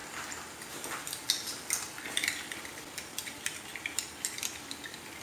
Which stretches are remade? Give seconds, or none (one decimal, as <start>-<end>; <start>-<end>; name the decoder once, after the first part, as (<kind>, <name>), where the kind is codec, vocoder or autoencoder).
none